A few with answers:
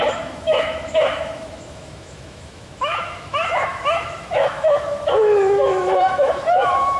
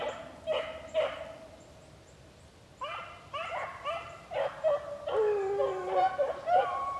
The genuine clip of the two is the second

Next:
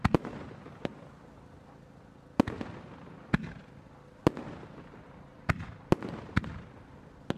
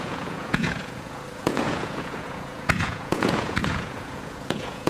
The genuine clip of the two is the first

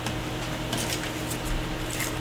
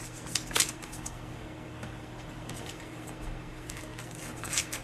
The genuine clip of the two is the first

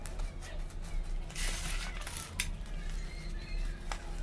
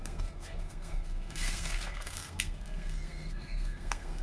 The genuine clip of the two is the first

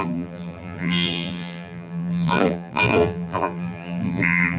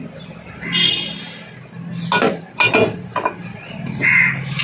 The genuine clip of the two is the second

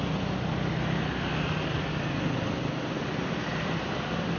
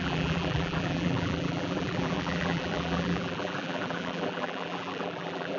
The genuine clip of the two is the first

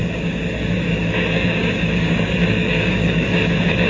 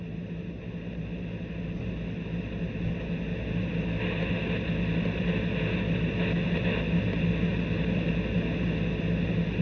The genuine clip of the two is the second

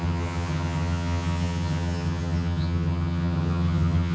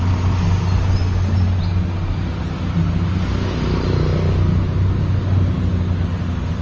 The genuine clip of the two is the second